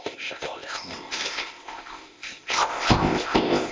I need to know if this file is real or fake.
fake